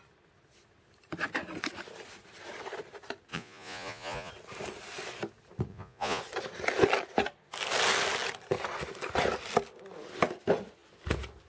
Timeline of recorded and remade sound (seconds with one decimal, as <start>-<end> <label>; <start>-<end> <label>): 0.0-3.3 recorded; 3.3-4.3 remade; 4.3-5.7 recorded; 5.7-6.2 remade; 6.2-11.5 recorded